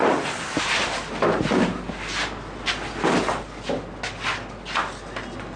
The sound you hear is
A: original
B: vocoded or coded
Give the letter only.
A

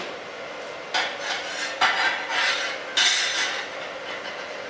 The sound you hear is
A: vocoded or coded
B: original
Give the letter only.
B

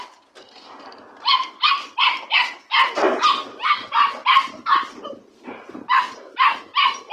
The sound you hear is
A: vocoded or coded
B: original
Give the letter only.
B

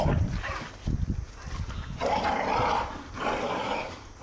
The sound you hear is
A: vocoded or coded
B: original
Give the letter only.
B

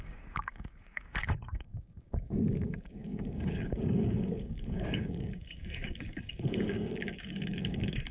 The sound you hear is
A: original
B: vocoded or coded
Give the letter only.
B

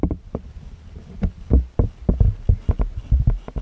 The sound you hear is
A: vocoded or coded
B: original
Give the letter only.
B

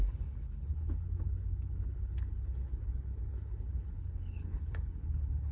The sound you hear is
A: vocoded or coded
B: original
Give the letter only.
A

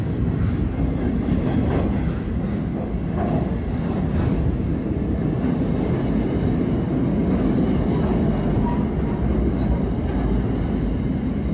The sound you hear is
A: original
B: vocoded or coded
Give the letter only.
A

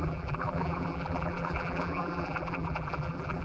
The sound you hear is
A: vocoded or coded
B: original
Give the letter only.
A